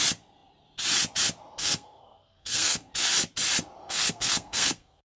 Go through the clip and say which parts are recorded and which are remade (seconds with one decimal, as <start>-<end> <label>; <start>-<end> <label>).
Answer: 0.0-1.6 recorded; 1.6-2.9 remade; 2.9-3.8 recorded; 3.8-5.2 remade